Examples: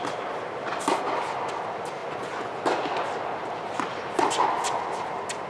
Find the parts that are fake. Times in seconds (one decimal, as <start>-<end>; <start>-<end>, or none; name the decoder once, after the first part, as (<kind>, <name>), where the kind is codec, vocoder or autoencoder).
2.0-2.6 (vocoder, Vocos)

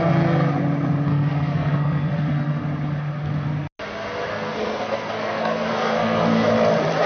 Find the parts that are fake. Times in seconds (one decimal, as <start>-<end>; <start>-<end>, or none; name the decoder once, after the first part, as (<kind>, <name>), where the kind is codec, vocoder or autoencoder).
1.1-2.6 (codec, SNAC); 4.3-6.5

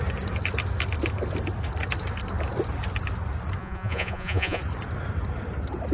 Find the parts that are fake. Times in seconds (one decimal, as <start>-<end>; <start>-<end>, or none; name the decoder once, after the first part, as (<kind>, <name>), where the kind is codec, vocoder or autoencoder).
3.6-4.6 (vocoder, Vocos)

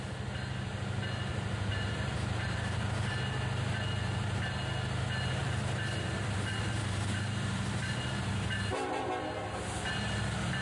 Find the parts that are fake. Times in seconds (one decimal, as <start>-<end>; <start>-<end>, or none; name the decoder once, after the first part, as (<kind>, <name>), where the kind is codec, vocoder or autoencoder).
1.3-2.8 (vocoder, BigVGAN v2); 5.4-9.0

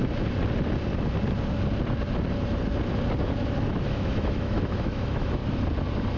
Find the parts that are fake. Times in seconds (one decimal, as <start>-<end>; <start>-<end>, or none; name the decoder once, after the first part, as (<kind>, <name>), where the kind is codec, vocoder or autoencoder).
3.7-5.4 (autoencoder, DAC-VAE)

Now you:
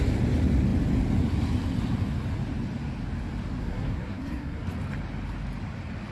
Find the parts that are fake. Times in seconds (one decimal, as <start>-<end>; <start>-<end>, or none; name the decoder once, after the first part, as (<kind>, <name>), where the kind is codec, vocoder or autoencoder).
3.6-4.6 (codec, SNAC)